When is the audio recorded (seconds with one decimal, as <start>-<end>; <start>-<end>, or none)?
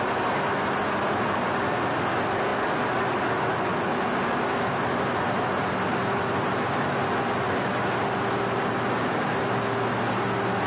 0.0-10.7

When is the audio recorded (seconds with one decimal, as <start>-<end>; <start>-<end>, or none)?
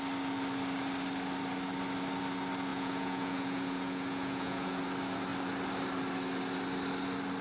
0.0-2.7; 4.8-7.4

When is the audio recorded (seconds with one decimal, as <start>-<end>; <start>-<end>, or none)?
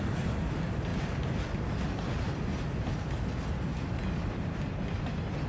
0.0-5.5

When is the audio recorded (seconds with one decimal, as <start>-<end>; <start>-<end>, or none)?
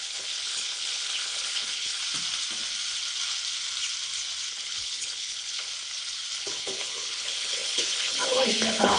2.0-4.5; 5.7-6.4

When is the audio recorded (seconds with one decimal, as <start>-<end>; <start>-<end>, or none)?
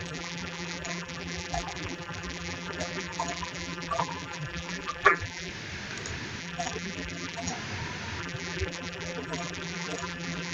5.5-6.4; 7.5-8.2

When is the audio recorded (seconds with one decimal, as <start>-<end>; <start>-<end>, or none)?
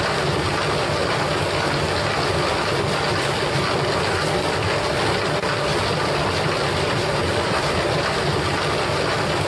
0.0-9.5